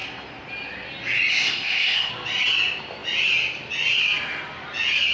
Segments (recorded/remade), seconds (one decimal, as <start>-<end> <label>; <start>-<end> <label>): 0.0-1.3 recorded; 1.3-2.1 remade; 2.1-5.1 recorded